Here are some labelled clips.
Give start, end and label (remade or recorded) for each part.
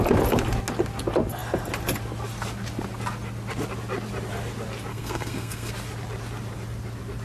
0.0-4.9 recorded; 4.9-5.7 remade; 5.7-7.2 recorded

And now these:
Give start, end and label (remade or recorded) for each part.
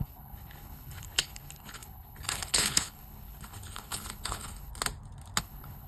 0.0-4.7 remade; 4.7-5.4 recorded; 5.4-5.9 remade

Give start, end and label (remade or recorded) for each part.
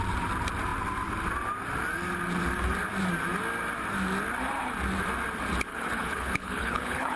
0.0-5.7 recorded; 5.7-7.2 remade